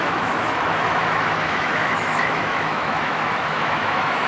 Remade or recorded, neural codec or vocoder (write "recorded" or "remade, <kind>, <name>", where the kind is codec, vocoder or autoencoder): remade, autoencoder, DAC-VAE